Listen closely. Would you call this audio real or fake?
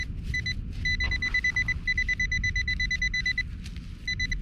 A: real